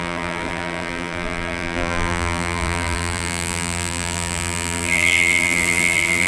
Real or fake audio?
fake